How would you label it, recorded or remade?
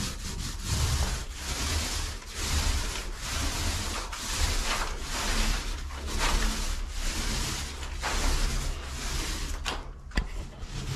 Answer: recorded